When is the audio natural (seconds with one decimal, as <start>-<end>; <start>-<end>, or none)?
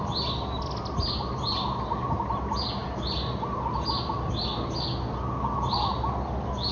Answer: 0.0-6.7